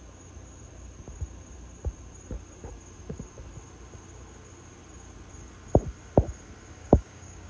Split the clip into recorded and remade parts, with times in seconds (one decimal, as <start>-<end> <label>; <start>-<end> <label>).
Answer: 0.0-6.8 recorded; 6.8-7.5 remade